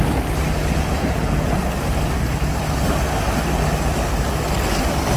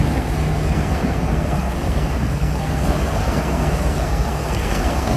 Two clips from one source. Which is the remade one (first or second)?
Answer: second